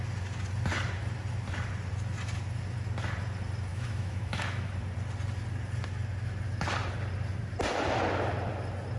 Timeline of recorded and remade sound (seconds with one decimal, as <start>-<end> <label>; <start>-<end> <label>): 0.0-3.7 recorded; 3.7-4.7 remade; 4.7-9.0 recorded